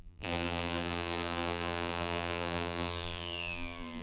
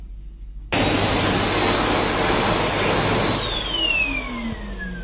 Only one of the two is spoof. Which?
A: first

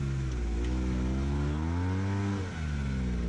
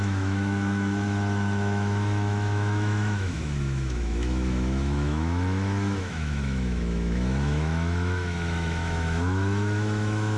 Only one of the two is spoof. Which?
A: second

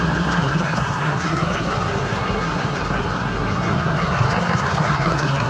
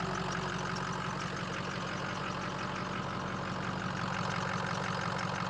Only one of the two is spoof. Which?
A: first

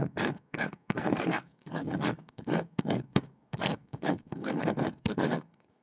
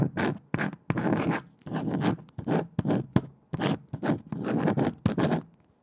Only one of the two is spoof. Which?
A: first